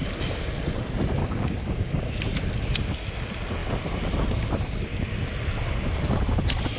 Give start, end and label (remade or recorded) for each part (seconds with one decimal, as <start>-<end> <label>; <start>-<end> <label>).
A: 0.0-1.2 recorded; 1.2-2.2 remade; 2.2-6.8 recorded